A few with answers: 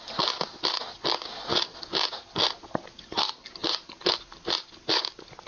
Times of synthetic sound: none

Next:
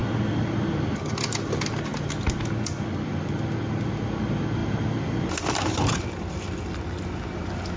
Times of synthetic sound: 4.6-7.1

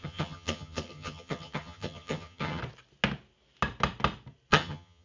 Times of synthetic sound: 0.0-2.6; 4.5-5.0